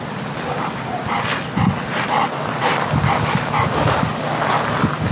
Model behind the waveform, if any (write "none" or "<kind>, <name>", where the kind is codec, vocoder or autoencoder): none